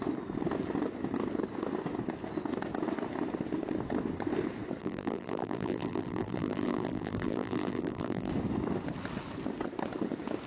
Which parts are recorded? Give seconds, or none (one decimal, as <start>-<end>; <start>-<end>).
0.0-4.8; 8.3-10.5